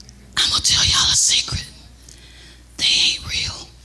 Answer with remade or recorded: recorded